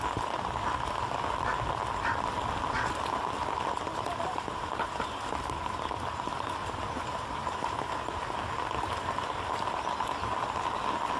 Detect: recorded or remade recorded